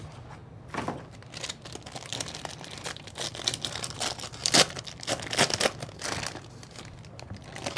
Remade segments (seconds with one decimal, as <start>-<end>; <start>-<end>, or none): 2.1-5.1